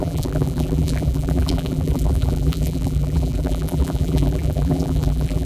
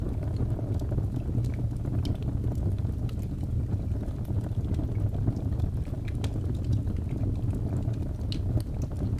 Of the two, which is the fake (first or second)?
first